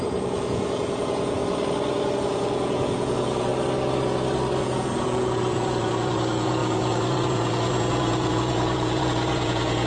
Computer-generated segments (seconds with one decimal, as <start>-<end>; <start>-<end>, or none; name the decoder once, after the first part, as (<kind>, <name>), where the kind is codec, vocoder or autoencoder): 0.0-1.4 (vocoder, Vocos); 2.2-3.5; 4.6-9.9